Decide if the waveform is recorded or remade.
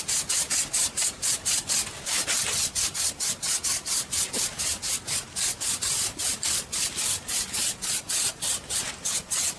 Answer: recorded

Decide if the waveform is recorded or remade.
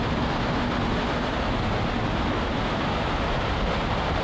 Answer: recorded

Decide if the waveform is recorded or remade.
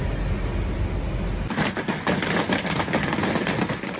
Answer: recorded